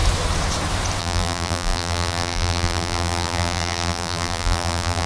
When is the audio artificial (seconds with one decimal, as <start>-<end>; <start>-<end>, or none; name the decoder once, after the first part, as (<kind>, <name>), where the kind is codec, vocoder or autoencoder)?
1.0-5.1 (vocoder, BigVGAN v2)